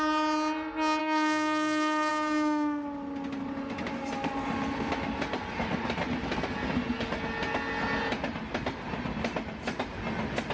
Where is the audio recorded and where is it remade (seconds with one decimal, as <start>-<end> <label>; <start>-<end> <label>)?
0.0-1.0 recorded; 1.0-2.1 remade; 2.1-10.5 recorded